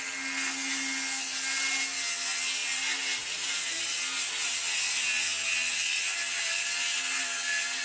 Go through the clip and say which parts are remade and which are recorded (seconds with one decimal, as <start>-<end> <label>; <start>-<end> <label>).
0.0-2.6 recorded; 2.6-3.8 remade; 3.8-7.8 recorded